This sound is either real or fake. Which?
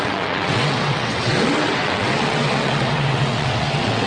fake